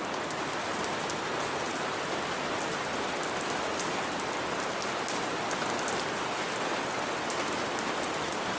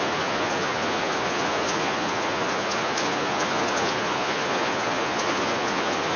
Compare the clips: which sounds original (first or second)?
first